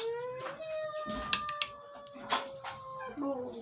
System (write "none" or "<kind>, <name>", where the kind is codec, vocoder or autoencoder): none